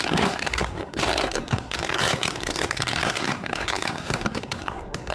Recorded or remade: remade